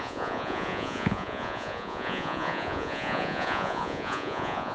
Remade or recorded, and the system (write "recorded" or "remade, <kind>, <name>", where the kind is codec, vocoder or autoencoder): remade, vocoder, Vocos